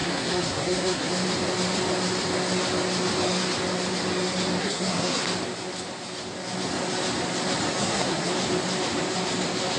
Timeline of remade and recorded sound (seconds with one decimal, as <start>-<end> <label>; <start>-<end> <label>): 0.0-1.1 remade; 1.1-4.6 recorded; 4.6-5.2 remade; 5.2-7.8 recorded; 7.8-8.3 remade; 8.3-9.8 recorded